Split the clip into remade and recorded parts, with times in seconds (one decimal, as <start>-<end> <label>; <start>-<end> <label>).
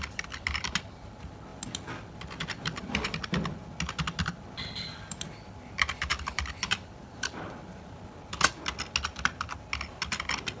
0.0-6.1 recorded; 6.1-7.9 remade; 7.9-10.6 recorded